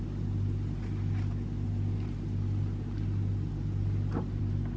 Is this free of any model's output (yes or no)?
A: yes